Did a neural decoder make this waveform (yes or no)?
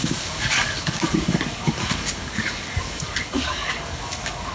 yes